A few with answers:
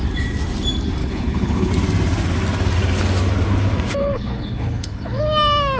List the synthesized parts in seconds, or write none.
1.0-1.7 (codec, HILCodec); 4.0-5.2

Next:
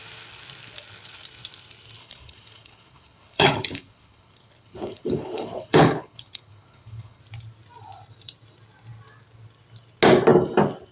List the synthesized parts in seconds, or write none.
2.0-7.2 (codec, HILCodec)

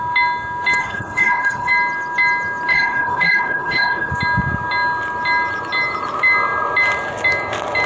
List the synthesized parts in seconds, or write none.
0.8-1.7 (codec, HILCodec); 2.7-4.1

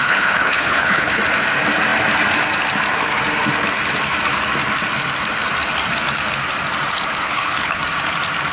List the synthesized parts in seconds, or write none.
0.0-1.2 (codec, HILCodec); 7.2-7.8

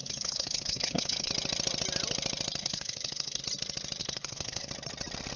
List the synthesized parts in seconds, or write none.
0.0-1.3 (codec, HILCodec); 2.6-3.4; 4.0-4.7

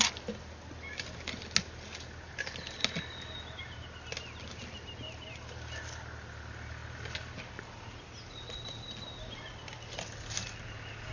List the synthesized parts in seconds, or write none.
none

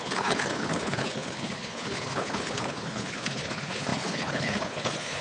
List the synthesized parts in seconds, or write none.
0.0-5.2 (codec, HILCodec)

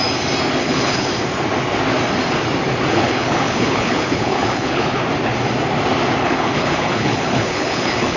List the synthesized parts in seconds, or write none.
0.6-1.1 (codec, HILCodec); 2.9-5.0; 6.2-8.2